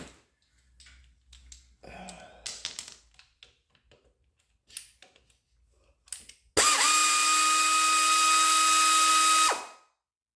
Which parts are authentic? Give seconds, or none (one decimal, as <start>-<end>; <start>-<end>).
0.0-10.4